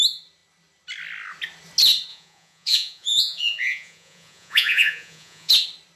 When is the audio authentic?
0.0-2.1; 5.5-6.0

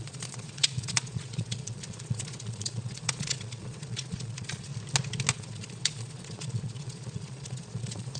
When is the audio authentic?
4.7-5.3

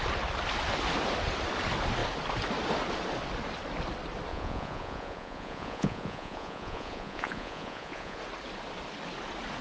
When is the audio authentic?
0.0-4.3; 8.2-9.6

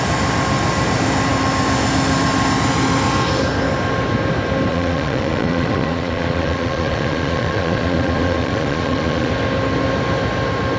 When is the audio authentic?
0.0-4.7; 9.3-10.8

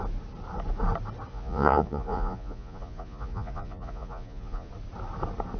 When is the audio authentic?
0.0-1.3; 4.7-5.6